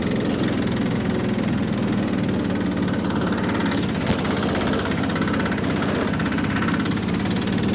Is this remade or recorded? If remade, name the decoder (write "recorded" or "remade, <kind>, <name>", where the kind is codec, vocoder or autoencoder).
recorded